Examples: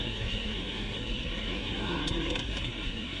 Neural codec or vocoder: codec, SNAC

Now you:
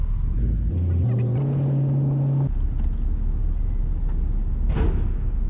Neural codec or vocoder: none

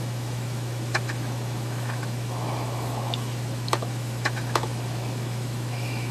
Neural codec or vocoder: autoencoder, DAC-VAE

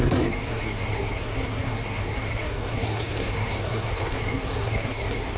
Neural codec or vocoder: codec, SNAC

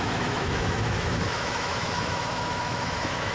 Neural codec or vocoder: autoencoder, DAC-VAE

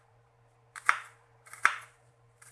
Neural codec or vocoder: vocoder, BigVGAN v2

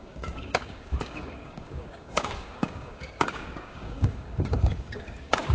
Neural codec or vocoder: codec, DAC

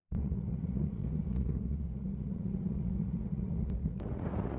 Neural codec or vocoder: vocoder, Vocos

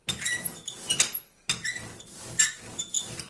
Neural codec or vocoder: none